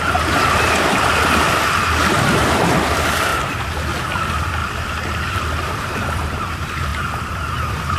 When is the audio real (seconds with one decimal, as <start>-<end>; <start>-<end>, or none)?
3.3-4.0; 6.9-7.5